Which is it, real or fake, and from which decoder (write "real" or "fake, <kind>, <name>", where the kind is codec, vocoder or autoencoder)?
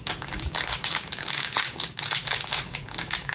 fake, codec, DAC